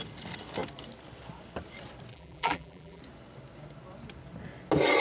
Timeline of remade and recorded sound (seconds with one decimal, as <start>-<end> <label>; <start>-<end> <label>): 0.0-2.1 recorded; 2.1-3.0 remade; 3.0-5.0 recorded